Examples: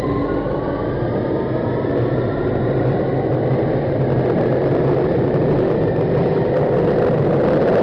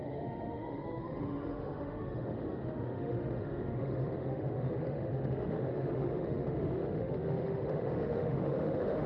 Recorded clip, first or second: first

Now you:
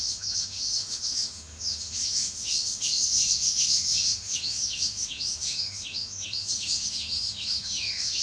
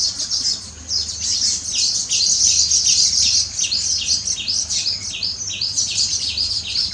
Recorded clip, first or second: second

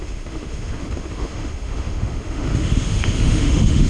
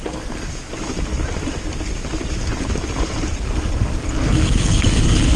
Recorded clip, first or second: second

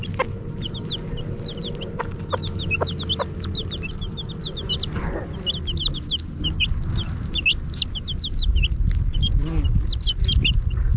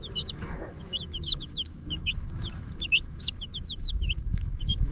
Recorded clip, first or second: first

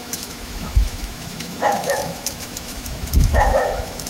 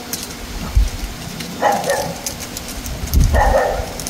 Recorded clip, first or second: second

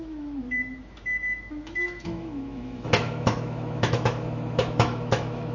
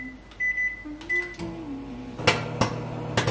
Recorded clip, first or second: second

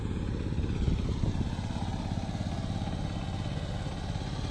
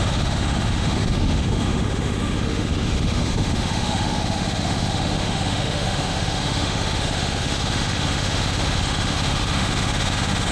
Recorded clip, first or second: first